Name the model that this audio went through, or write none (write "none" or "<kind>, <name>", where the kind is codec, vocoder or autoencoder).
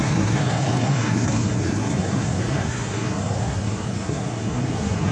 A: codec, SNAC